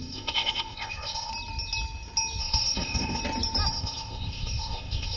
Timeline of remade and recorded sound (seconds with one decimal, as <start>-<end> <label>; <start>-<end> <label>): 0.0-1.3 remade; 1.3-2.4 recorded; 2.4-3.2 remade; 3.2-3.7 recorded; 3.7-5.2 remade